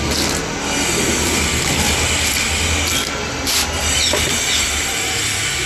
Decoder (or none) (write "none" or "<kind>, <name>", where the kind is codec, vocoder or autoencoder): none